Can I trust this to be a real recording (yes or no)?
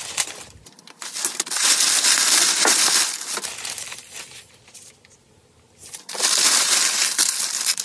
yes